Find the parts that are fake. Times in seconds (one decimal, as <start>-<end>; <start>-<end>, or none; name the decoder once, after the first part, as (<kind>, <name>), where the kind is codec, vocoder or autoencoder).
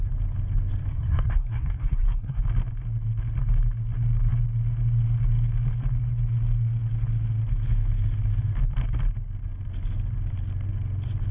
0.9-2.4 (codec, SNAC)